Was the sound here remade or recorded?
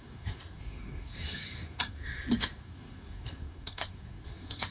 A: remade